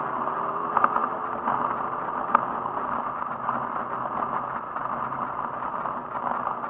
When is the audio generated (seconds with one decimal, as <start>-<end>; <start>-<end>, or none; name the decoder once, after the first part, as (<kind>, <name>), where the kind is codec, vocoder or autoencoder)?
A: none